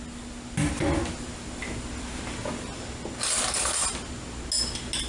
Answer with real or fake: real